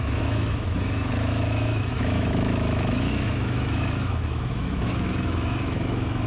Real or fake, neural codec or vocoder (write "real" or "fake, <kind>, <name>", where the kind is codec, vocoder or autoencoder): fake, autoencoder, DAC-VAE